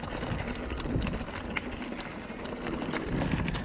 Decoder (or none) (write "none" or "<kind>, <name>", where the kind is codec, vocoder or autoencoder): none